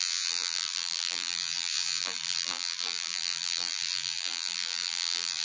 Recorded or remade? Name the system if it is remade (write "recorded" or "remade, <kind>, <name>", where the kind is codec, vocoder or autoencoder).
remade, vocoder, BigVGAN v2